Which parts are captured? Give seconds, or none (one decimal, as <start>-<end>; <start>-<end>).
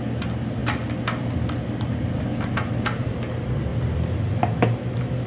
0.0-3.7; 4.4-5.3